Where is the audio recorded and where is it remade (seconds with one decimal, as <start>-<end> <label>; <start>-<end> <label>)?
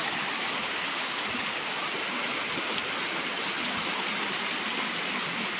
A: 0.0-0.6 recorded; 0.6-1.2 remade; 1.2-5.6 recorded